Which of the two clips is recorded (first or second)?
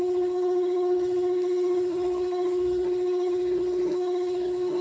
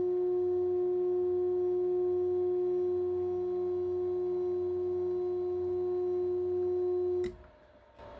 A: second